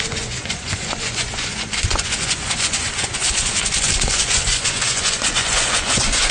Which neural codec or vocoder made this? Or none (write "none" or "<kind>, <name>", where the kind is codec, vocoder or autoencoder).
vocoder, Vocos